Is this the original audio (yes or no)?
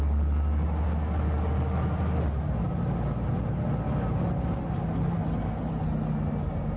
yes